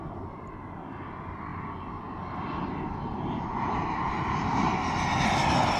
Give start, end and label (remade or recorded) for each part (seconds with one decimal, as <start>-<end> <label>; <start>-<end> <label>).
0.0-5.8 recorded